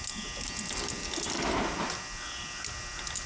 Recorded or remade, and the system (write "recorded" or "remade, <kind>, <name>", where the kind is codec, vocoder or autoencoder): recorded